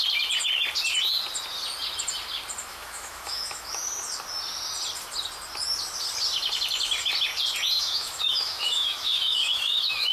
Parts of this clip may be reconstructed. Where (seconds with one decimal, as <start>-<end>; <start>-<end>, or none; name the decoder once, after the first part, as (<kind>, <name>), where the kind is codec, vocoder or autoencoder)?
2.6-3.8 (autoencoder, DAC-VAE); 7.8-10.1